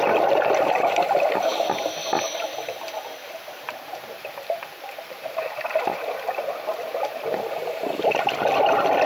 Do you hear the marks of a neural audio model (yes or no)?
yes